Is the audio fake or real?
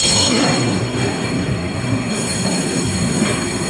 fake